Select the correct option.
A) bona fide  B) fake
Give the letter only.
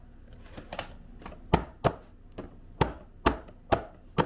A